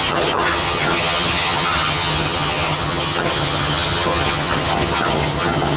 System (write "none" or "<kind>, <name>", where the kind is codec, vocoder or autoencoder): vocoder, HiFi-GAN